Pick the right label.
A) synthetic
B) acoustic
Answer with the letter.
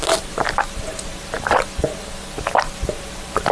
B